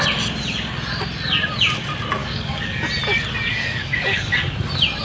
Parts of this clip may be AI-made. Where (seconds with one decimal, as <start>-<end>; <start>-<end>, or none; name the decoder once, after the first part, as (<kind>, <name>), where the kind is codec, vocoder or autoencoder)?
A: 2.2-2.9 (codec, DAC); 3.5-4.4